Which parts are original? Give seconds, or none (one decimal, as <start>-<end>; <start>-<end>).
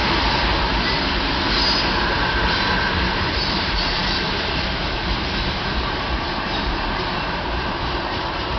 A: 0.0-3.1